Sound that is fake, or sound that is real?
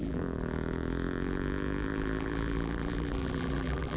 fake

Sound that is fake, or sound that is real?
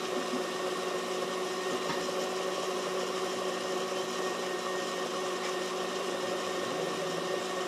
real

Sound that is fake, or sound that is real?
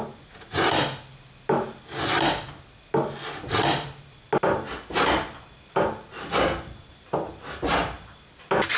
real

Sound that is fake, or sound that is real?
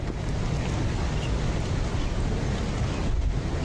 real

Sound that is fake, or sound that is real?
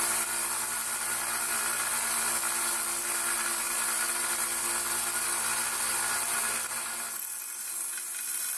real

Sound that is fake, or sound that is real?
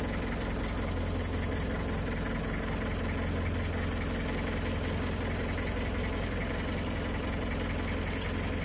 real